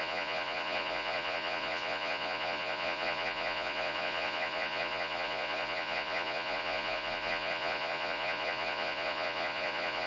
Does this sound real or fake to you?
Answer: fake